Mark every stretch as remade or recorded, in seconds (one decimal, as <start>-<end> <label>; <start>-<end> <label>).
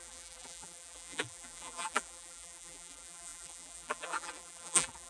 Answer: 0.0-5.1 remade